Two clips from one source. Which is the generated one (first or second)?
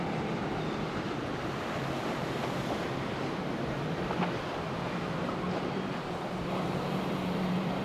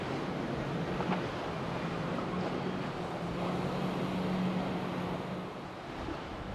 first